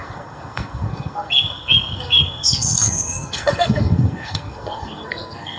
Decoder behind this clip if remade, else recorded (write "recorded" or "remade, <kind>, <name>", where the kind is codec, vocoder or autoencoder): remade, codec, SNAC